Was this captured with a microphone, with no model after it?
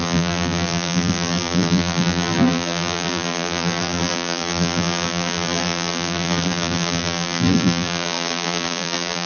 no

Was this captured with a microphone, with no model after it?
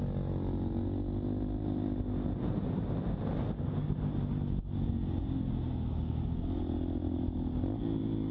yes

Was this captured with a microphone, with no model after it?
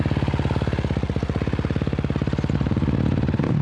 yes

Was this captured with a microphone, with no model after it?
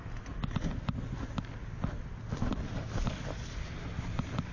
yes